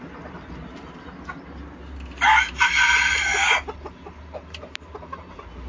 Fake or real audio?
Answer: real